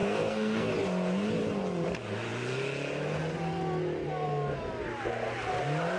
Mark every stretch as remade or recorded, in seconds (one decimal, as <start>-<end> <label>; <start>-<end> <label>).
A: 0.0-0.7 remade; 0.7-6.0 recorded

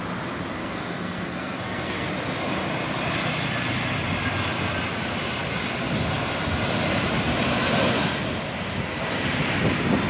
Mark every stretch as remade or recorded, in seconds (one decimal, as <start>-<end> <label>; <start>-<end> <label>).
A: 0.0-0.6 recorded; 0.6-2.1 remade; 2.1-10.1 recorded

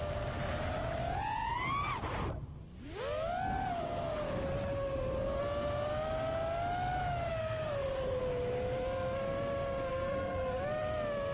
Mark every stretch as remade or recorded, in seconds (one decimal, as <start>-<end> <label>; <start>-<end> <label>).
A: 0.0-7.4 recorded; 7.4-8.2 remade; 8.2-9.9 recorded; 9.9-10.6 remade; 10.6-11.3 recorded

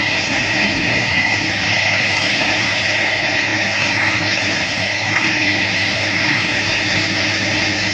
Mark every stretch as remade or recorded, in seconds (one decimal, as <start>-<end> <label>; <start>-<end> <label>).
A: 0.0-7.9 remade